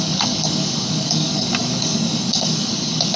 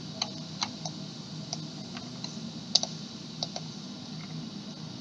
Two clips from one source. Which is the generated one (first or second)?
first